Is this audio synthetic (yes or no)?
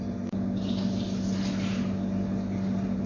no